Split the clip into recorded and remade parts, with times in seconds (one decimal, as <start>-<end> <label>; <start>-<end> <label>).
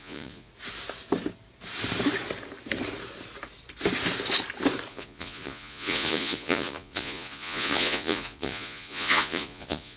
0.0-0.5 remade; 0.5-4.9 recorded; 4.9-10.0 remade